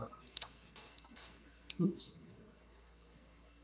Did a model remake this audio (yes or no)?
yes